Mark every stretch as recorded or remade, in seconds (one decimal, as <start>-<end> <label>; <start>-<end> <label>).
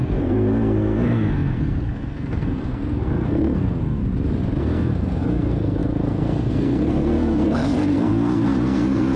0.0-4.0 remade; 4.0-4.6 recorded; 4.6-9.2 remade